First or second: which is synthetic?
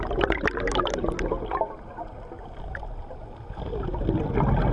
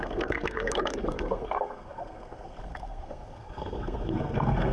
second